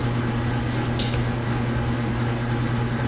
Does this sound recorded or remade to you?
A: recorded